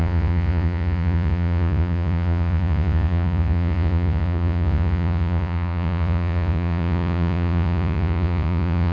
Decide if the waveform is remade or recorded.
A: remade